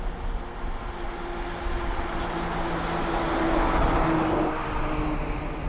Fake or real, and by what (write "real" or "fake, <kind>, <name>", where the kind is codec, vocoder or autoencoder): real